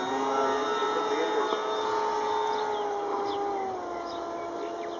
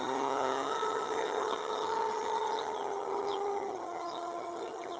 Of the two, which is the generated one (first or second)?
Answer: second